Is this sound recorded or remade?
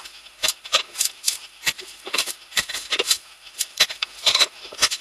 remade